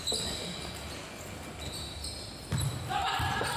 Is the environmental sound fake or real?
real